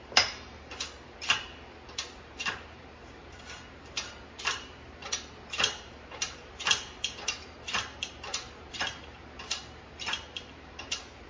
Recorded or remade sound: remade